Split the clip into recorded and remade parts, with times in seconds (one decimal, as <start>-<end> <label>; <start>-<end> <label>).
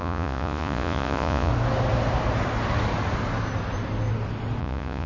0.0-1.5 remade; 1.5-4.6 recorded; 4.6-5.1 remade